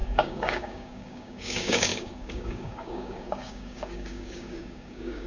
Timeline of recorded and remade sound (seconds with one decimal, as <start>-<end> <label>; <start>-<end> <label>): 0.0-5.3 remade